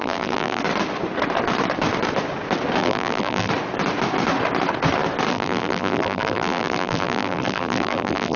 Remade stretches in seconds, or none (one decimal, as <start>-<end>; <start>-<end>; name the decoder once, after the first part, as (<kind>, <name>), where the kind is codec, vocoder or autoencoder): 0.0-0.6 (vocoder, BigVGAN v2); 2.8-3.5; 5.3-8.4